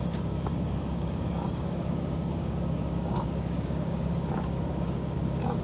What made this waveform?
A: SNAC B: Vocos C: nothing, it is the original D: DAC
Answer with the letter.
D